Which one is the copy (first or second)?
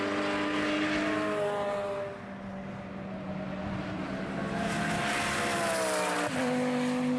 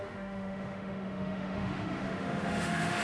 second